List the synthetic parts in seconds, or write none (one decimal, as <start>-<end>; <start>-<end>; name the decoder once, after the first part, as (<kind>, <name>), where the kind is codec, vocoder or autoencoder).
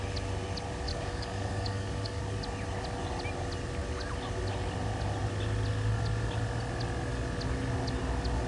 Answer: 0.9-2.2 (codec, DAC)